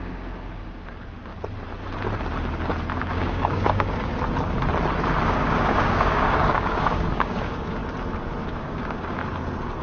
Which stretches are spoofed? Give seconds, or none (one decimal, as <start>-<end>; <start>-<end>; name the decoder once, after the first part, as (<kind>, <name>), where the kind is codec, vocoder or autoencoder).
0.0-1.3 (codec, DAC); 3.0-4.1; 5.2-7.8; 8.4-9.2